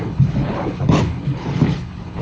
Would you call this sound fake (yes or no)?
yes